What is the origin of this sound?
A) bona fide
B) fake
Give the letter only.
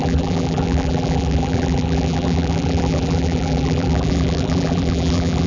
B